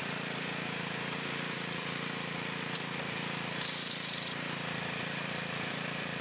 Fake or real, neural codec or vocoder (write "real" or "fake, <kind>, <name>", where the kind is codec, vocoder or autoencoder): fake, vocoder, BigVGAN v2